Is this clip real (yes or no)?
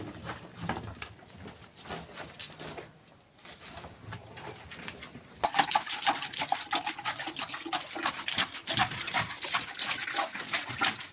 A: yes